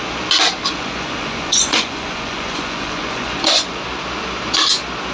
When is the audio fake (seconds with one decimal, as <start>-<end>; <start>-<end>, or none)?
0.6-3.7